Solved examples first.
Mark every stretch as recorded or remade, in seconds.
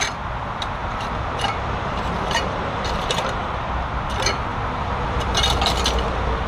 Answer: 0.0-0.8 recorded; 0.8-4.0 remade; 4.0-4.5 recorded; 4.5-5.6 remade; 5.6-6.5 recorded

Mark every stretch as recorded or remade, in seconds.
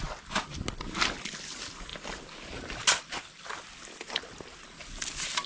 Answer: 0.0-5.5 recorded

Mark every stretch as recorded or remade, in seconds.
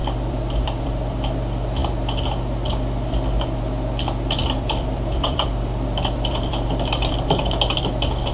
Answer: 0.0-1.3 remade; 1.3-4.4 recorded; 4.4-7.9 remade; 7.9-8.3 recorded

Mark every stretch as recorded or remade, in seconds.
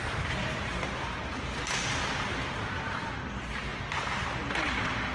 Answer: 0.0-3.1 remade; 3.1-3.7 recorded; 3.7-4.3 remade; 4.3-5.1 recorded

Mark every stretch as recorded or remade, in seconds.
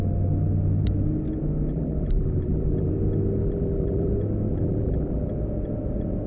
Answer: 0.0-1.7 recorded; 1.7-2.9 remade; 2.9-3.4 recorded; 3.4-4.1 remade; 4.1-4.5 recorded; 4.5-5.3 remade; 5.3-6.3 recorded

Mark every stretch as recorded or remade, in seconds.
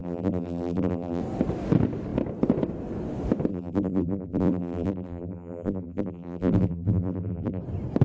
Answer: 0.0-1.2 remade; 1.2-3.5 recorded; 3.5-7.6 remade; 7.6-8.0 recorded